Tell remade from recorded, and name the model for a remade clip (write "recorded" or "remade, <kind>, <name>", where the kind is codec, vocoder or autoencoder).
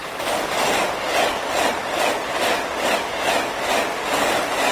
recorded